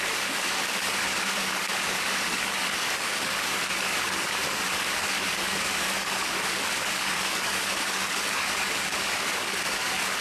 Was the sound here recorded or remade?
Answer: remade